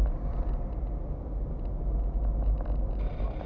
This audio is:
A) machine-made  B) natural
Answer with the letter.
B